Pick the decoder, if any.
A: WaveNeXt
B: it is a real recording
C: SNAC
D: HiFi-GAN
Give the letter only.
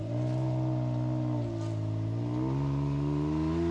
B